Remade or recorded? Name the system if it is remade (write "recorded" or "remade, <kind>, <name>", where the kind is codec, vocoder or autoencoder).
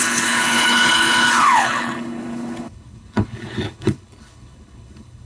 remade, codec, HILCodec